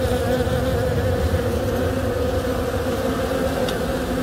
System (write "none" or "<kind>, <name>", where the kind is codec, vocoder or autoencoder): none